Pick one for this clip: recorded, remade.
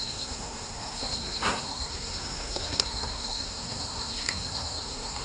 remade